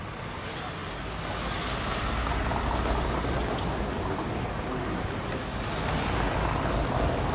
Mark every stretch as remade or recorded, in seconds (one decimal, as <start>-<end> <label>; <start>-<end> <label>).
0.0-7.3 recorded